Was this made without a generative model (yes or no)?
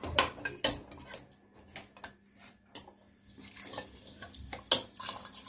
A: yes